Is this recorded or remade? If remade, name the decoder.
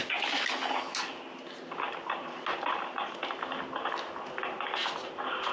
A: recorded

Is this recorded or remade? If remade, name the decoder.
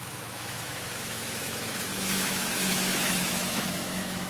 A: remade, autoencoder, DAC-VAE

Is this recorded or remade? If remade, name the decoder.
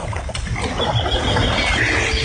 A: recorded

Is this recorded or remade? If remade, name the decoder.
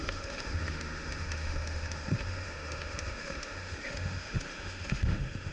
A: remade, autoencoder, DAC-VAE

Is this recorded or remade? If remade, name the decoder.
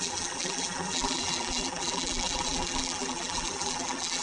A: remade, vocoder, BigVGAN v2